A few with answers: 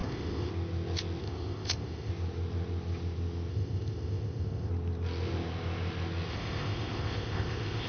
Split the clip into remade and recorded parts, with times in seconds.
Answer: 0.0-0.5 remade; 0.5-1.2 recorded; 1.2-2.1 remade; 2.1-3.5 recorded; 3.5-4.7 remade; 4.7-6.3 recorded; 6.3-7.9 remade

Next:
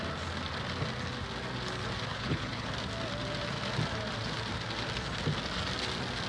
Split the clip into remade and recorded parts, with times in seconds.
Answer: 0.0-2.1 recorded; 2.1-2.7 remade; 2.7-6.3 recorded

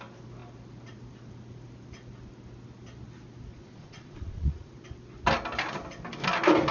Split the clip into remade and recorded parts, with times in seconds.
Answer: 0.0-3.5 recorded; 3.5-4.7 remade; 4.7-6.7 recorded

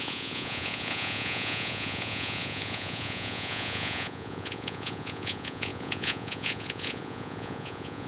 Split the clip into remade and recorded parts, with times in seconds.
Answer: 0.0-8.1 remade

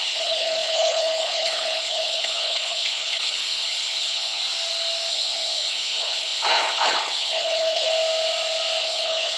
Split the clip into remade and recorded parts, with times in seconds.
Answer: 0.0-4.4 remade; 4.4-5.1 recorded; 5.1-7.9 remade; 7.9-8.8 recorded; 8.8-9.4 remade

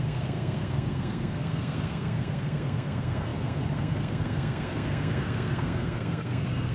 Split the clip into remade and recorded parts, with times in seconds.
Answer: 0.0-6.7 remade